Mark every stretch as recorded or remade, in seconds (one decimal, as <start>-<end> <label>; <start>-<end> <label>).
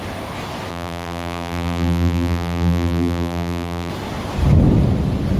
0.0-0.7 recorded; 0.7-3.9 remade; 3.9-5.4 recorded